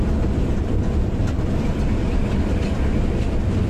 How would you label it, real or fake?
real